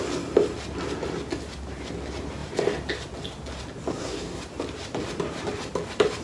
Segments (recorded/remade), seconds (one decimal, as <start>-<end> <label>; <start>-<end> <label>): 0.0-3.9 recorded; 3.9-4.4 remade; 4.4-6.2 recorded